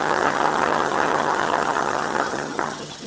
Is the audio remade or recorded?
remade